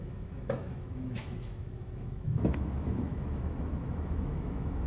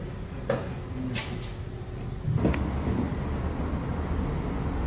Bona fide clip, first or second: second